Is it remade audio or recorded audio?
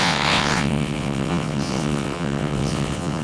remade